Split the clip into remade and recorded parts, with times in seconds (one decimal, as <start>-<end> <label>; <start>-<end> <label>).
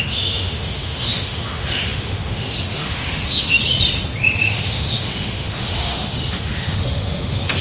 0.0-3.6 remade; 3.6-4.4 recorded; 4.4-7.6 remade